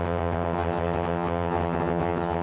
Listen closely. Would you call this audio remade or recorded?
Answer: remade